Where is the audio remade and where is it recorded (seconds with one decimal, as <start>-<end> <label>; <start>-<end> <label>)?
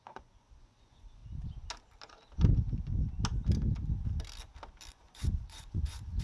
0.0-1.2 remade; 1.2-4.9 recorded; 4.9-6.2 remade